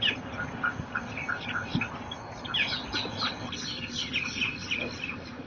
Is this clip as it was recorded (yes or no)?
yes